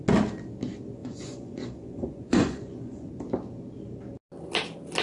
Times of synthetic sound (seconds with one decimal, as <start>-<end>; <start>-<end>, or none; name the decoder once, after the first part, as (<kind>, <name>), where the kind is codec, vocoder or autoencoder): 1.0-3.1 (vocoder, Vocos)

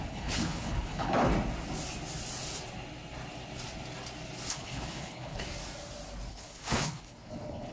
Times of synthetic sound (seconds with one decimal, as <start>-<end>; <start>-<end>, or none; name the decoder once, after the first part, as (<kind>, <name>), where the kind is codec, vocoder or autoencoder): 0.0-1.3 (codec, HILCodec); 4.5-5.5; 6.3-7.7

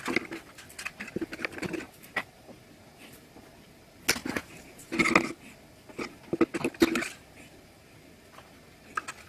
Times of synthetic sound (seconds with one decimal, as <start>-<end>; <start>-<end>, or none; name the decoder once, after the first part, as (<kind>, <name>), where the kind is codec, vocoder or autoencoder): 1.3-3.3 (vocoder, BigVGAN v2); 4.2-5.0